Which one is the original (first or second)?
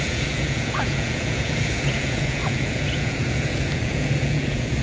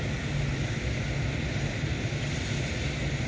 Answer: second